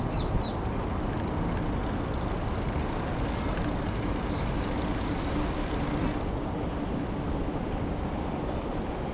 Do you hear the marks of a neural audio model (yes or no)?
no